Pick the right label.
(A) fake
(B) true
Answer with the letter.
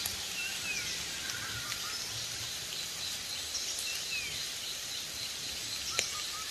B